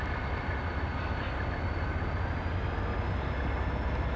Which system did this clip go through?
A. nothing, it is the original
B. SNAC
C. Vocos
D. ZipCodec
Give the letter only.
A